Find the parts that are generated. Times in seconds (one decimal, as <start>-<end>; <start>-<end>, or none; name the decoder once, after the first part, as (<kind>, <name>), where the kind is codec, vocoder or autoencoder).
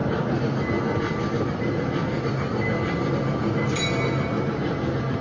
none